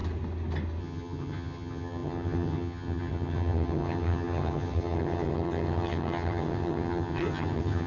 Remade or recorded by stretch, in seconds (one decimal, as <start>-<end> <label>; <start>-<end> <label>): 0.0-0.8 recorded; 0.8-7.9 remade